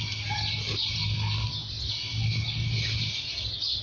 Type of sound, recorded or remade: recorded